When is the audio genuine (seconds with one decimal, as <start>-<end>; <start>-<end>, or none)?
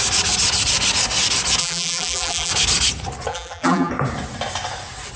0.0-1.6; 2.5-3.3; 3.9-5.2